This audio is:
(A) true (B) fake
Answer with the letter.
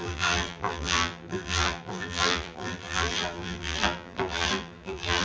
B